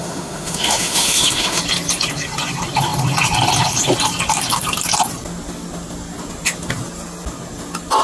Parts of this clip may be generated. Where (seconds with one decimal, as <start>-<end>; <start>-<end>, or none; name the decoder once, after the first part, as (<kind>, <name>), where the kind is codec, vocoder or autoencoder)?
0.0-1.6 (autoencoder, DAC-VAE)